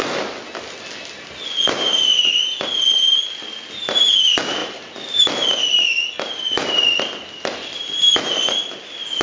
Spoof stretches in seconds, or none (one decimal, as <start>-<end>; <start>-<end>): 2.1-2.7; 4.6-5.5

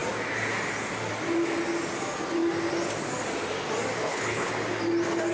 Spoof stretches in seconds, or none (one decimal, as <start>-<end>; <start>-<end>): 4.0-4.5

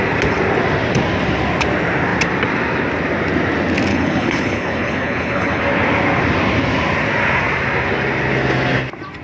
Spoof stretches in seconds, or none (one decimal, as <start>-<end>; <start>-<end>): 3.9-5.6

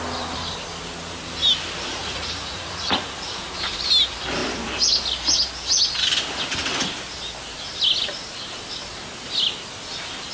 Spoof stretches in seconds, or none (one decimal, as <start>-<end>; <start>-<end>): 1.9-3.9

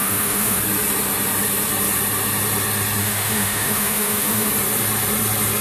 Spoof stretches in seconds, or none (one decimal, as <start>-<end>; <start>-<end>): 0.0-0.6; 3.0-4.5

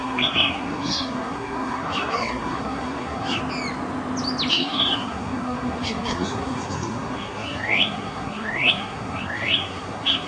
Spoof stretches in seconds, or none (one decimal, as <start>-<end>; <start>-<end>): 0.0-3.4; 4.5-10.3

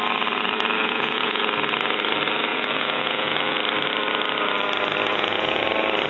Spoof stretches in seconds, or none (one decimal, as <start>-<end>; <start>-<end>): 0.8-1.4; 2.5-3.6; 5.1-5.6

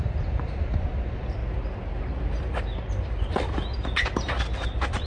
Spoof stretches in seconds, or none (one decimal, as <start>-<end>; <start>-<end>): 0.0-1.4; 4.5-5.1